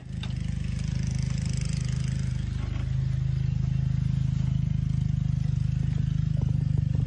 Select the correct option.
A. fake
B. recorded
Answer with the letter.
B